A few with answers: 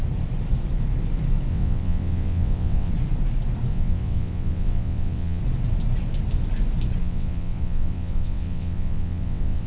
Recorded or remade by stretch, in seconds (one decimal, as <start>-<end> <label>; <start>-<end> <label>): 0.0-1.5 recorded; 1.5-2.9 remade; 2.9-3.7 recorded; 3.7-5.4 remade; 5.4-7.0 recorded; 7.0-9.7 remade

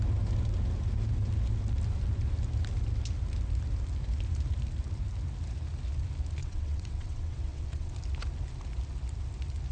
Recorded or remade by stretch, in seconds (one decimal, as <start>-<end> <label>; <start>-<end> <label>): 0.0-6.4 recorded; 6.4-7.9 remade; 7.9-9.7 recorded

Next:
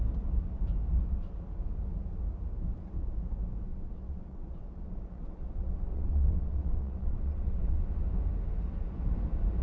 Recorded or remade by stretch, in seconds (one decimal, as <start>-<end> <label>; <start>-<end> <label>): 0.0-3.7 recorded; 3.7-7.8 remade; 7.8-9.6 recorded